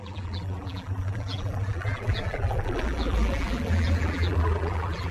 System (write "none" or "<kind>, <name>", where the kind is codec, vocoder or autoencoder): vocoder, BigVGAN v2